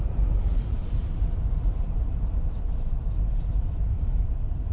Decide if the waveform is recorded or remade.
remade